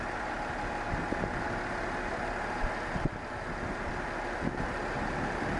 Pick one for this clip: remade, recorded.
recorded